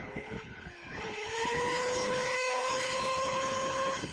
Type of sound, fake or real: fake